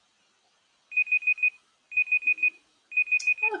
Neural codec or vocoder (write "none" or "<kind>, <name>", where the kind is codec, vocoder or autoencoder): none